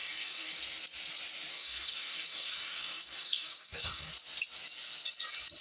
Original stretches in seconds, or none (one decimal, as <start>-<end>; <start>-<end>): 0.6-1.5; 4.1-5.6